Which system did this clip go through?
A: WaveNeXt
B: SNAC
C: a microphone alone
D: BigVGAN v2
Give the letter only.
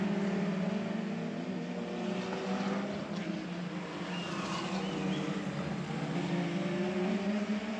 C